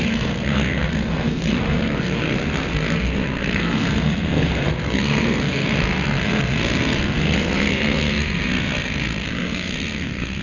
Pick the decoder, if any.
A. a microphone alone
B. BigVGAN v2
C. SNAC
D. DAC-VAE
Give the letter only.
C